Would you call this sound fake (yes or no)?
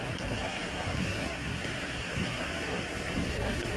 yes